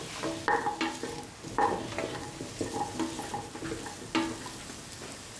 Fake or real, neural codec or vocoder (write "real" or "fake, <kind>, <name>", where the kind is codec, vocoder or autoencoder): real